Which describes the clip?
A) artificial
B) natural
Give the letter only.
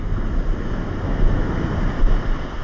B